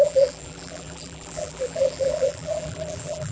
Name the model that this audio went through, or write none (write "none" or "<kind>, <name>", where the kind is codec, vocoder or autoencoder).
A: vocoder, BigVGAN v2